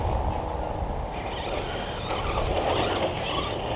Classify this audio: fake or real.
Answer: real